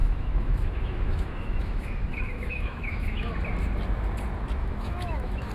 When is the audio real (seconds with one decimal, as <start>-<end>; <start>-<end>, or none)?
3.3-4.6